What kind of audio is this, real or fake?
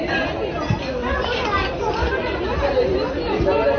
real